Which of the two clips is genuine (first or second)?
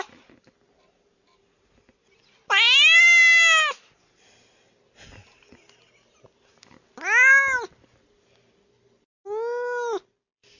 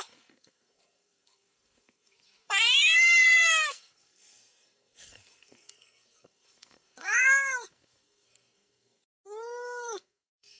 first